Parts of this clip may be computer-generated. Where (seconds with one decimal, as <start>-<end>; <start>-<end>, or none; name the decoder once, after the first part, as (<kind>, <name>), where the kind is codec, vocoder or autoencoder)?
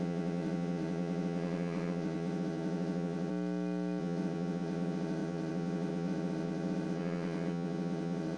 0.0-3.3 (vocoder, WaveNeXt); 4.0-8.4